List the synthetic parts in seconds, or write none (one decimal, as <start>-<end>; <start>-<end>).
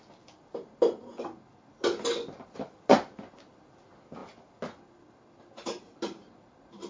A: none